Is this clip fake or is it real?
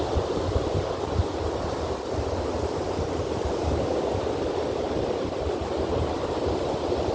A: real